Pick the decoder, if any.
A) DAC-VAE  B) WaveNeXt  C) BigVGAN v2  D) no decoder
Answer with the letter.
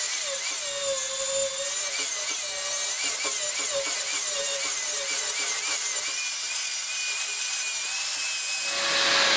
D